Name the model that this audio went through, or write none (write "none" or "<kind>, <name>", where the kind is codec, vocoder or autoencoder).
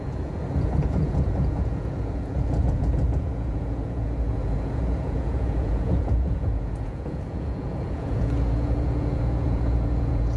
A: vocoder, Vocos